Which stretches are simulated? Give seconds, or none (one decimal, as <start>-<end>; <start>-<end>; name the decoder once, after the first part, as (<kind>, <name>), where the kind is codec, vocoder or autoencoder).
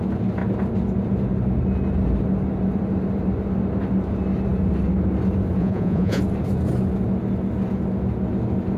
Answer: 5.6-6.2 (vocoder, Vocos)